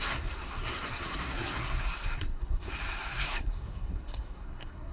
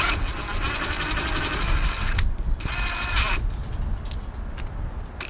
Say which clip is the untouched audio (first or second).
second